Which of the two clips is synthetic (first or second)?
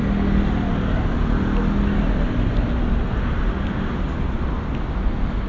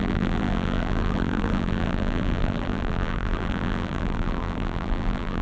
second